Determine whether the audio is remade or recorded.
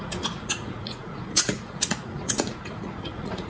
remade